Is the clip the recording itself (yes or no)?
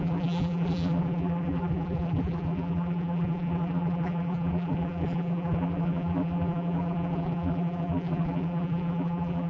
no